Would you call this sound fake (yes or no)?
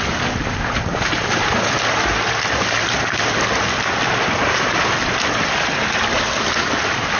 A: no